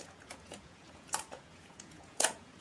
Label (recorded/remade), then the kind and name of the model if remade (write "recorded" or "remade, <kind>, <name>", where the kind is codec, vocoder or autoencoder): remade, vocoder, Vocos